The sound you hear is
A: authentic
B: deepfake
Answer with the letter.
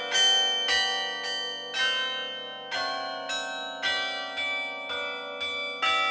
A